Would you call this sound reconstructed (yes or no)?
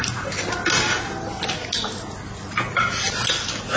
no